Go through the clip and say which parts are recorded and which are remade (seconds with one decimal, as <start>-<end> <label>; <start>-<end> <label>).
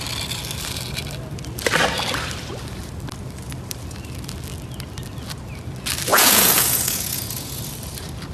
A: 0.0-6.1 recorded; 6.1-7.6 remade; 7.6-8.3 recorded